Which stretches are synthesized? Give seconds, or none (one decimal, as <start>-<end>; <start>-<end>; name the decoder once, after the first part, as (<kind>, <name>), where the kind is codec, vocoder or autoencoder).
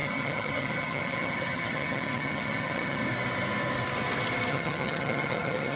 0.0-3.0 (vocoder, HiFi-GAN); 4.5-5.8